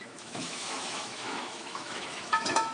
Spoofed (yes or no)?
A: yes